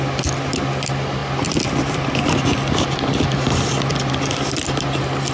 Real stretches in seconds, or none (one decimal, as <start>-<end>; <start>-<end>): 0.0-5.3